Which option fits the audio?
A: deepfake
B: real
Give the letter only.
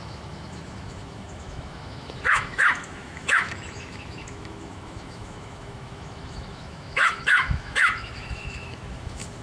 A